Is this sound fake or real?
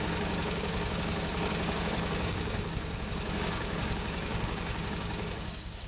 fake